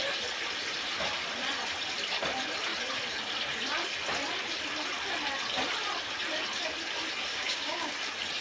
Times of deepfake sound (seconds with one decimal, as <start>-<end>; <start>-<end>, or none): 7.3-7.9